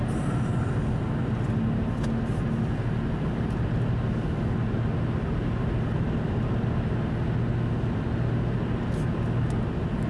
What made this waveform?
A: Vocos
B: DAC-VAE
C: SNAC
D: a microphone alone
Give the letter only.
D